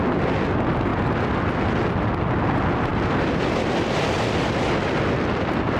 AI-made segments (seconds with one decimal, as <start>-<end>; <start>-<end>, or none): none